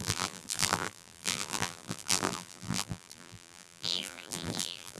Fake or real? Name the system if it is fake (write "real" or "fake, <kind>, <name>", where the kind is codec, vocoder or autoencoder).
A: fake, vocoder, BigVGAN v2